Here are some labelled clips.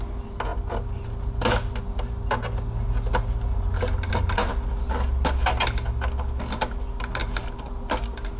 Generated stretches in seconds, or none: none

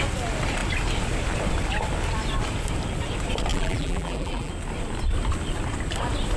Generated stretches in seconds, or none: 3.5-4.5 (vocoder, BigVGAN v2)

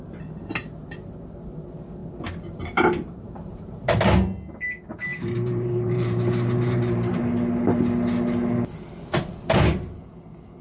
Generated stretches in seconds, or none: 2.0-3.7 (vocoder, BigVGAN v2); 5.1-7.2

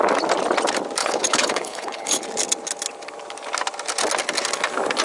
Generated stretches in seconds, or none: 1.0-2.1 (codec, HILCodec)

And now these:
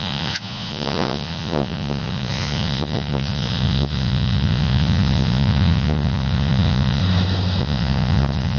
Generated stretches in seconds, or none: 0.0-7.0 (vocoder, Vocos); 7.6-8.6

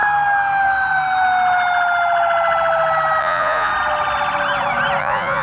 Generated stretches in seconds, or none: 3.2-3.7 (vocoder, Vocos); 5.0-5.4

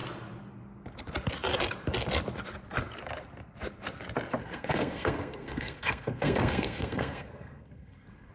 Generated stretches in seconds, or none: 4.4-8.3 (codec, SNAC)